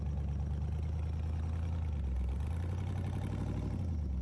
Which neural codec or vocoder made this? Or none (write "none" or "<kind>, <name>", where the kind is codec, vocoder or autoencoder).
none